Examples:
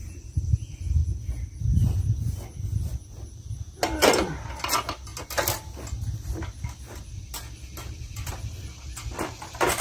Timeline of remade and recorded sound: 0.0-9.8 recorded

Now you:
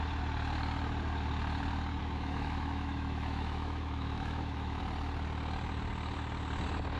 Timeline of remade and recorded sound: 0.0-2.0 recorded; 2.0-4.8 remade; 4.8-7.0 recorded

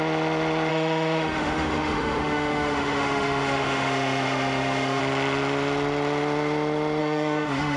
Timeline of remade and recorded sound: 0.0-0.7 recorded; 0.7-5.0 remade; 5.0-7.0 recorded; 7.0-7.8 remade

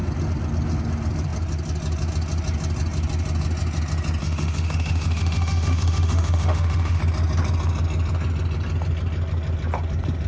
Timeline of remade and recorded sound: 0.0-4.2 recorded; 4.2-7.0 remade; 7.0-10.3 recorded

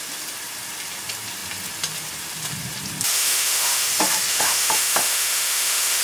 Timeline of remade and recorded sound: 0.0-3.1 recorded; 3.1-3.9 remade; 3.9-4.3 recorded; 4.3-6.0 remade

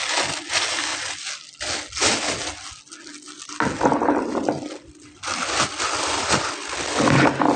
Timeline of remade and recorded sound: 0.0-7.6 recorded